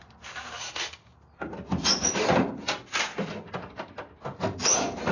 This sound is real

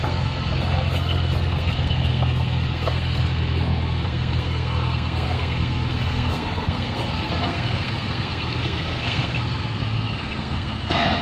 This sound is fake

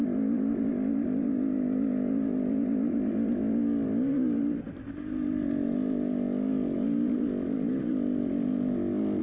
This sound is real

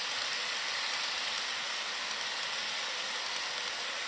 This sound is real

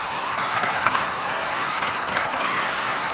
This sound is fake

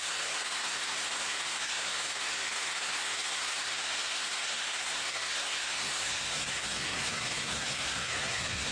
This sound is fake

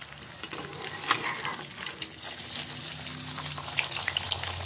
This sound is real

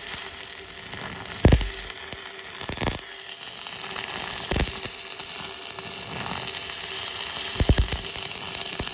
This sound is real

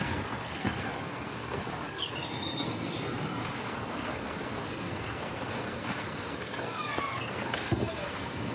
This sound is fake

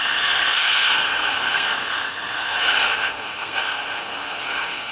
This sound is fake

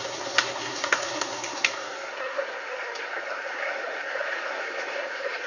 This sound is fake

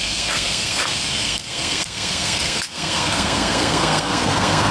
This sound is fake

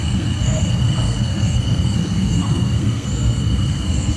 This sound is fake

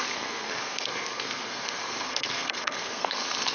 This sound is fake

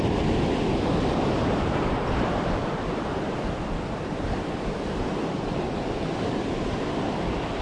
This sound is real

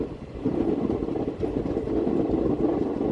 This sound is real